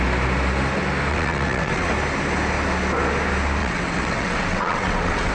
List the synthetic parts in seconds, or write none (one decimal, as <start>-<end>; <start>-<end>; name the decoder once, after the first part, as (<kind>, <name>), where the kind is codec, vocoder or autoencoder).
1.1-1.9 (vocoder, WaveNeXt); 3.6-5.3